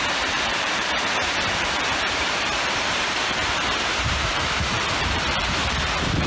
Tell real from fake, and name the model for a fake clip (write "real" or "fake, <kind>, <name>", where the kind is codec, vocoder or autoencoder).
fake, vocoder, BigVGAN v2